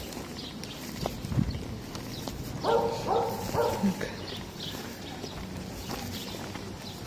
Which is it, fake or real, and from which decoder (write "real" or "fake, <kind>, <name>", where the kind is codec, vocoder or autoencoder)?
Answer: real